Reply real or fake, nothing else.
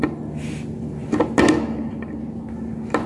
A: real